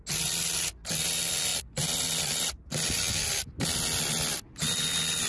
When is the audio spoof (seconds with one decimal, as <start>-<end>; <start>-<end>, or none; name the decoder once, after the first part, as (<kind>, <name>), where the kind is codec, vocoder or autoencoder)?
none